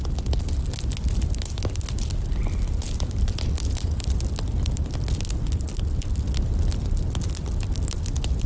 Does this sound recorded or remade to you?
recorded